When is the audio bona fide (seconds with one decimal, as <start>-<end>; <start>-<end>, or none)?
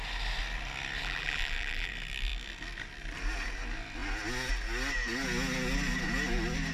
0.0-1.0; 1.9-6.7